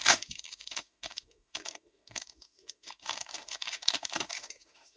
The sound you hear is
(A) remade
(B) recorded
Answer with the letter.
A